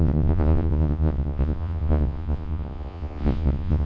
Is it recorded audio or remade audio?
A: remade